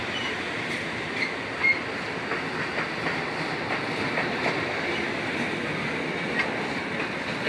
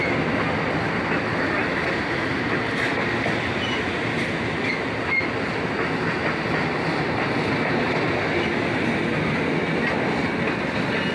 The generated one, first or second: first